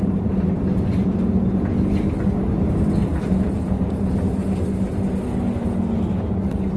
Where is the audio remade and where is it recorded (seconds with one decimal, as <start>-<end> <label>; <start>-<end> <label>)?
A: 0.0-3.1 recorded; 3.1-4.0 remade; 4.0-6.8 recorded